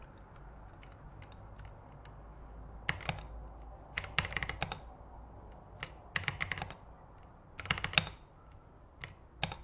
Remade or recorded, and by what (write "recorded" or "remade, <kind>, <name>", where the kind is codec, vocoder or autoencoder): recorded